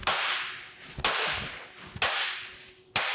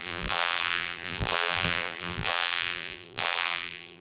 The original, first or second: first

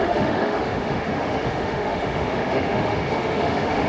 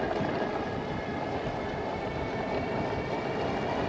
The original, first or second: second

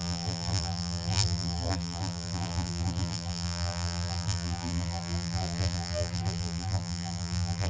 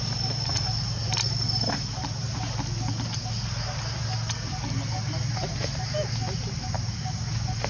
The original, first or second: second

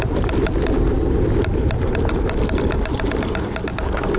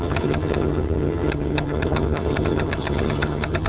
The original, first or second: first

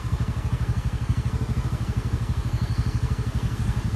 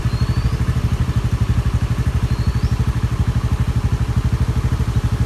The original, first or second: second